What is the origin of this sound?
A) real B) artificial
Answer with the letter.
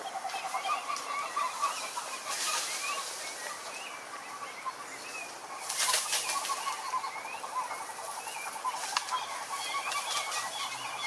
A